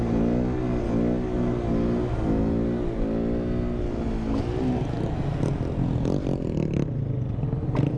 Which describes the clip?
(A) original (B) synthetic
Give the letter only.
A